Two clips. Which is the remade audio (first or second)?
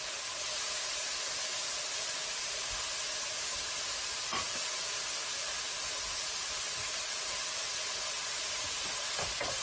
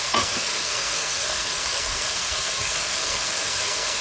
second